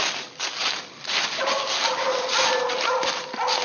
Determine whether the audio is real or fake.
real